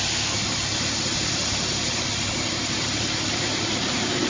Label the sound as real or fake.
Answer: fake